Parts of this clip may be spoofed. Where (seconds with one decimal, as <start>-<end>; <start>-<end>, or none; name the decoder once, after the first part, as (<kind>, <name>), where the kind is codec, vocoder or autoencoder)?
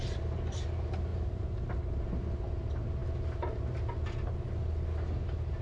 1.1-1.7 (vocoder, BigVGAN v2)